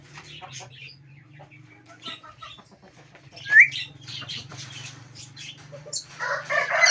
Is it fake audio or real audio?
fake